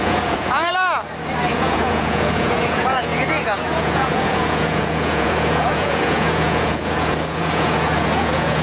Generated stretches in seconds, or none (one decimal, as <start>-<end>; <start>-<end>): 0.0-0.7; 1.5-8.6